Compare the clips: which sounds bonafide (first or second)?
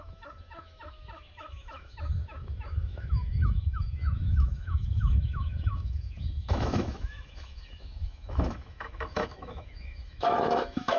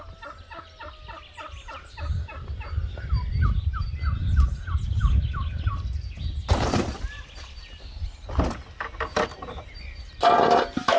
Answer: second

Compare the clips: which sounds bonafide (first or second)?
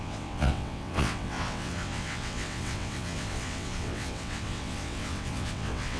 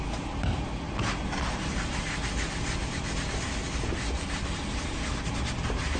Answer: second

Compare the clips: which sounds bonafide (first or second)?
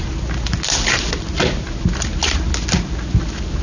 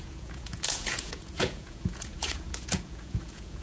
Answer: first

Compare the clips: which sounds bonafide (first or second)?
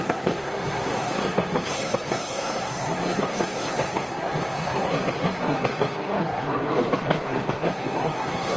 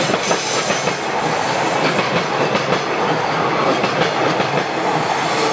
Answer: second